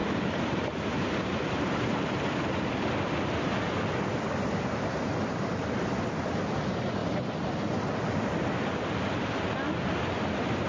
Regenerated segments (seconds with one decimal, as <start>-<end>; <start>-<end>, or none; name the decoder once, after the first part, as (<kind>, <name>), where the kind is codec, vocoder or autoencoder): 0.0-2.6 (vocoder, BigVGAN v2); 7.0-7.7

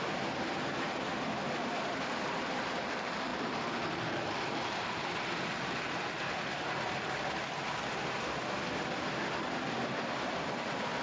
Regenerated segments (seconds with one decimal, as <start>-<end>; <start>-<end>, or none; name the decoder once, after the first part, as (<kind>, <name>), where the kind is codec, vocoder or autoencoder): none

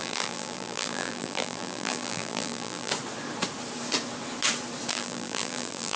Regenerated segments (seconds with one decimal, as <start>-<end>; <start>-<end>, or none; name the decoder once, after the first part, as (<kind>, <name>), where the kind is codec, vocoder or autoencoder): 0.0-2.9 (vocoder, BigVGAN v2); 4.9-6.0

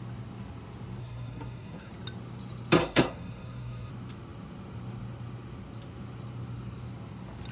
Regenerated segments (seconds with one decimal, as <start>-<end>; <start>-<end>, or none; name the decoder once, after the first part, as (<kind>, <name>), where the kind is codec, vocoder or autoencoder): 1.0-1.9 (codec, SNAC); 2.8-3.9

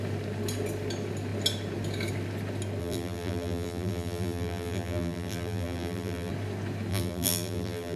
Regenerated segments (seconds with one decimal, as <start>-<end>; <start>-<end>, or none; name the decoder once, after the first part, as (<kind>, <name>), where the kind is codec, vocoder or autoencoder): 2.8-6.3 (vocoder, BigVGAN v2); 6.9-8.0

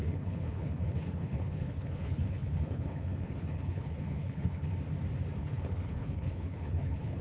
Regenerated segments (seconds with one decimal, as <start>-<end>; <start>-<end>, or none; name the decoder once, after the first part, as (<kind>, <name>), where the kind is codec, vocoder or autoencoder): 0.0-4.7 (codec, HILCodec); 5.4-7.2